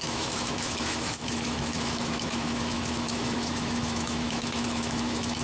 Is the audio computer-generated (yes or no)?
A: yes